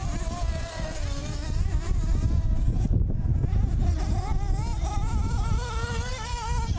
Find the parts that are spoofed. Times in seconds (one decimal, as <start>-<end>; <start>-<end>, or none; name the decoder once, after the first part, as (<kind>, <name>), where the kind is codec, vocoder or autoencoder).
1.2-4.0 (vocoder, BigVGAN v2)